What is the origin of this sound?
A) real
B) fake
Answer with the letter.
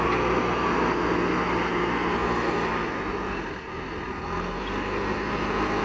A